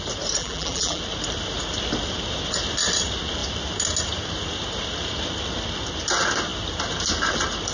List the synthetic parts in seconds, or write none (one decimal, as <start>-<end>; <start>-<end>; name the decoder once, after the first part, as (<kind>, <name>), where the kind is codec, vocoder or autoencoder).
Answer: 0.4-1.0 (vocoder, BigVGAN v2)